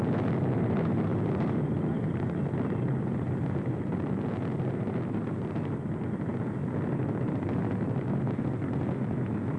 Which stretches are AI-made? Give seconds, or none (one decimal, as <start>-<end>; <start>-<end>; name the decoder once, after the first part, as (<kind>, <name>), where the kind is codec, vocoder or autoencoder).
1.1-1.7 (vocoder, BigVGAN v2)

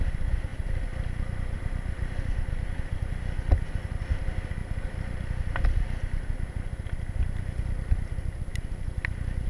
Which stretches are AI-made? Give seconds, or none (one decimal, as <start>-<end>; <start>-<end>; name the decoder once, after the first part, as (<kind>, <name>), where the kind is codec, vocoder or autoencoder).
none

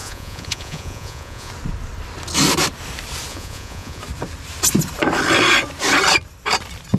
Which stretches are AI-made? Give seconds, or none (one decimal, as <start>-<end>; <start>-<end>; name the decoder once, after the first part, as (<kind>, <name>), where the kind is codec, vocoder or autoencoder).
0.0-1.5 (vocoder, Vocos); 3.3-4.0

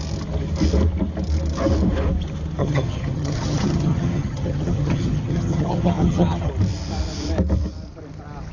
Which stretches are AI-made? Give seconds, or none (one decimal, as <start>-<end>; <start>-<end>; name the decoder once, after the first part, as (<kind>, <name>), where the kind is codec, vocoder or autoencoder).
2.6-6.5 (vocoder, HiFi-GAN)